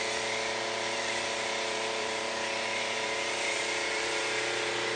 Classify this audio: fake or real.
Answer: fake